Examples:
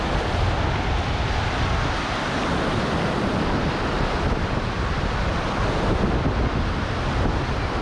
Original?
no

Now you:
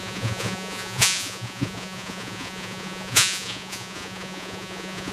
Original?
no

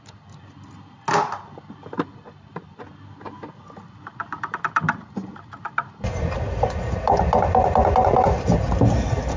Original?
yes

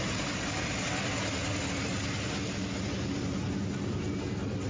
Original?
yes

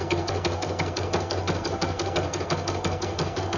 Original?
no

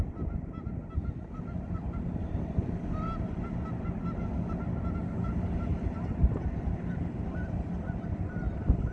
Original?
yes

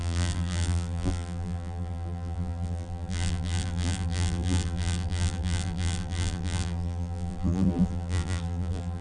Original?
no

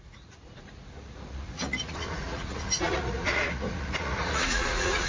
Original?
no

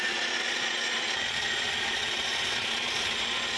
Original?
no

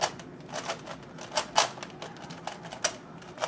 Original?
yes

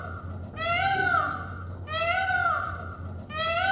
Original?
yes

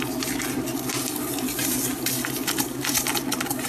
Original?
yes